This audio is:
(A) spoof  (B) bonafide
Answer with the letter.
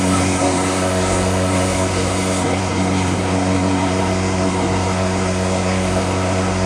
A